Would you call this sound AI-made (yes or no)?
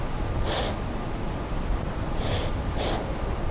no